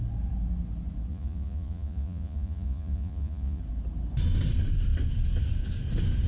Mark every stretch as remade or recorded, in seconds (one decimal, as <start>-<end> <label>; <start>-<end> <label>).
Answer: 0.0-1.1 recorded; 1.1-3.6 remade; 3.6-6.3 recorded